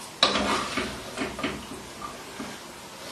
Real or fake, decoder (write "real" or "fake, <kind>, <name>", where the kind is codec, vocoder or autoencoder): real